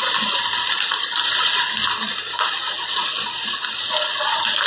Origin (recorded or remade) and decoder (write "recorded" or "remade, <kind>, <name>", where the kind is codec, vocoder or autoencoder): recorded